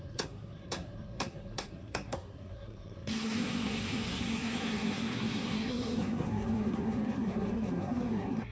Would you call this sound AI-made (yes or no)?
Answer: yes